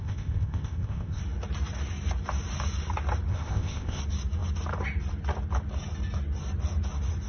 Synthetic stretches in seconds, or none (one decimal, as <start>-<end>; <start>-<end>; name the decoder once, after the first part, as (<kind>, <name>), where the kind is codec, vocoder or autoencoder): 0.0-1.2 (codec, ZipCodec); 3.3-4.0